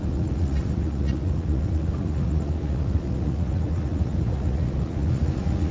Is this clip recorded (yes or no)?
no